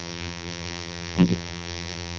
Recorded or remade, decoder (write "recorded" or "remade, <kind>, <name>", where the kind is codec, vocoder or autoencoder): remade, vocoder, BigVGAN v2